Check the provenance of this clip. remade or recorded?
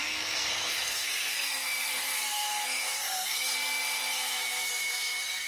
remade